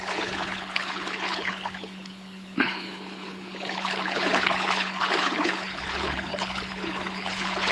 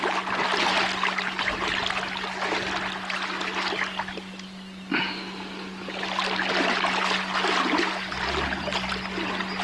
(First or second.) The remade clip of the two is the first